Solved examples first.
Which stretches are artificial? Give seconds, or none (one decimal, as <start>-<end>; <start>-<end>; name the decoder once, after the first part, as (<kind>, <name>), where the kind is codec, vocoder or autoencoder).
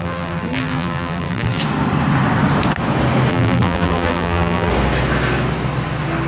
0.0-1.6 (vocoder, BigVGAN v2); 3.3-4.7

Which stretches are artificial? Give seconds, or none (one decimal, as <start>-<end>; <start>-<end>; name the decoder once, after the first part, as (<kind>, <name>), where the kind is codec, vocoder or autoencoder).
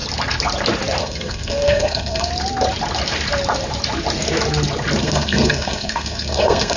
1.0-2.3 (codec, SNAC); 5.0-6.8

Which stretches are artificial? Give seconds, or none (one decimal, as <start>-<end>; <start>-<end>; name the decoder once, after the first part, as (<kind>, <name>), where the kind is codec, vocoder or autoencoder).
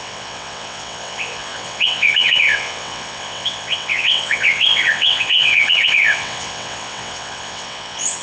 0.0-8.2 (vocoder, WaveNeXt)